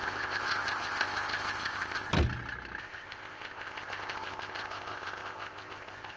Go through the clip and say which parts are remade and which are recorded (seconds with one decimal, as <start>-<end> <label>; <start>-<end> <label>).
0.0-2.1 remade; 2.1-2.8 recorded; 2.8-6.2 remade